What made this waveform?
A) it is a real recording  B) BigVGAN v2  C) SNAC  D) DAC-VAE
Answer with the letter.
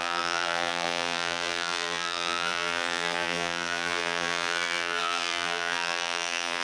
B